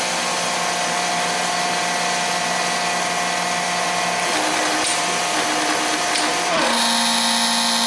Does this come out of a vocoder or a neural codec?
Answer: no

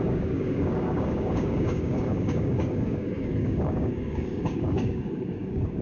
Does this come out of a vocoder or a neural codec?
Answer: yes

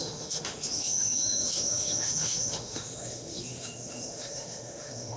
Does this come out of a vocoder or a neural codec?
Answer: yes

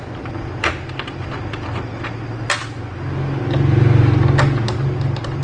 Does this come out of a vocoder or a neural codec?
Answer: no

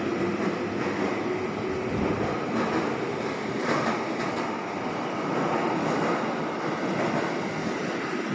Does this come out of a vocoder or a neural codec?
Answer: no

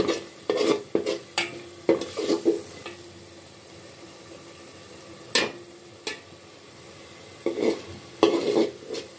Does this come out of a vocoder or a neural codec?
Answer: no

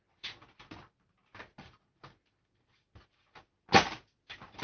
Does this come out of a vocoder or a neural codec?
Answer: no